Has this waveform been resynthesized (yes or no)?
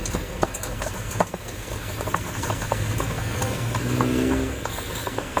yes